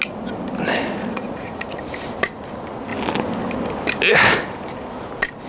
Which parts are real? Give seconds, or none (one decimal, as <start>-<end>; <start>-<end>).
0.0-1.1; 1.8-5.5